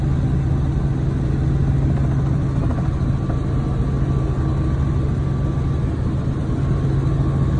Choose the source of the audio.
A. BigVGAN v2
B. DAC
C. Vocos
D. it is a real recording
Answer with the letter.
D